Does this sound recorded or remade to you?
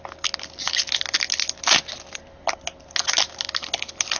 recorded